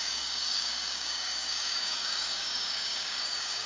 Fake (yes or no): yes